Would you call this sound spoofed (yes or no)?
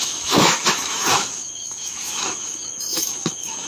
yes